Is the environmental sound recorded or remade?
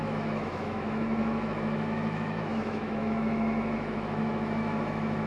remade